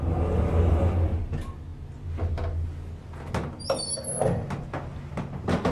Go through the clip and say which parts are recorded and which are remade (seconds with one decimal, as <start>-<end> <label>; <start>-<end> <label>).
0.0-5.7 recorded